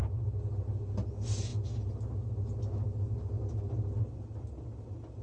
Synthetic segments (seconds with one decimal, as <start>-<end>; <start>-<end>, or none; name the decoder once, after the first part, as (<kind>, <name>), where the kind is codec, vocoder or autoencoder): none